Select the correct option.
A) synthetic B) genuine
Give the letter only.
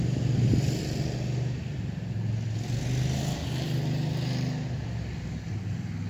B